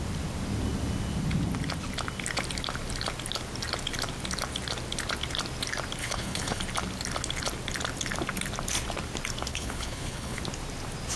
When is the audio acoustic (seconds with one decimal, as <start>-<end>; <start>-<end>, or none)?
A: 0.0-6.0; 6.6-9.5; 10.4-11.2